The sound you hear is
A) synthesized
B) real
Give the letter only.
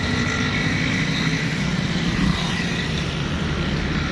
B